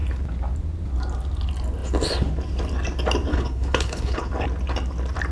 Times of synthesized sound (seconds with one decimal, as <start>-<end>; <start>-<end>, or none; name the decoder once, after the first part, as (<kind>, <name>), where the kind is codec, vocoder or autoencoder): 3.3-4.3 (codec, HILCodec)